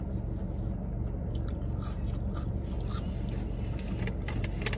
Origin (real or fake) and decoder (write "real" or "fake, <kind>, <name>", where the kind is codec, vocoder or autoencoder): real